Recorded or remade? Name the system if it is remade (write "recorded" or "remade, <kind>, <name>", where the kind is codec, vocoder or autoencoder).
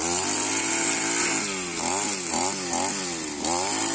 recorded